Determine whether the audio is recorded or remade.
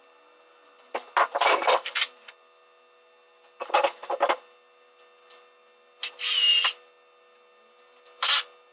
recorded